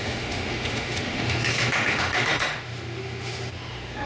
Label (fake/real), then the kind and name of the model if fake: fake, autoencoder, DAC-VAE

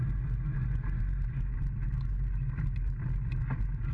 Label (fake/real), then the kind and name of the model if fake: real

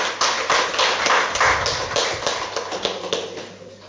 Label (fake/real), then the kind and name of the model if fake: real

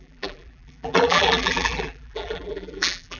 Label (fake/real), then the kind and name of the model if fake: fake, vocoder, BigVGAN v2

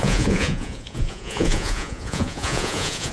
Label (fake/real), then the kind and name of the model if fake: fake, vocoder, Vocos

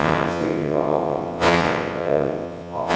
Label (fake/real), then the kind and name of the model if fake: fake, vocoder, WaveNeXt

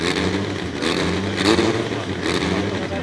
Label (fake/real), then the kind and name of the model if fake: real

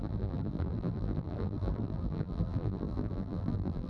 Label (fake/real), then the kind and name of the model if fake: fake, vocoder, BigVGAN v2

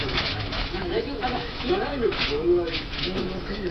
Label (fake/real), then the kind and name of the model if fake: fake, autoencoder, DAC-VAE